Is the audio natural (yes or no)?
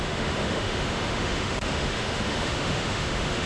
no